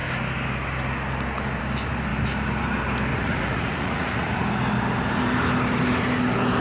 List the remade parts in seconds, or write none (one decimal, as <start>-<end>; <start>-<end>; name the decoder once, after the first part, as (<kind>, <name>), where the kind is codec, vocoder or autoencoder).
3.1-4.4 (vocoder, Vocos)